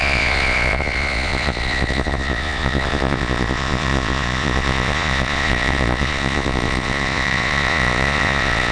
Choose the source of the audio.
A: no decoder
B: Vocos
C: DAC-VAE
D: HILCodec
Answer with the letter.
B